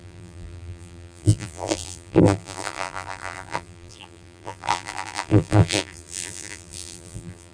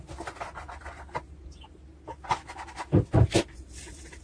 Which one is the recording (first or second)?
second